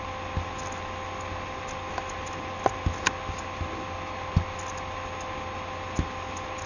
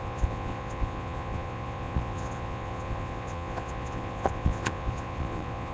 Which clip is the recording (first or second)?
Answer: first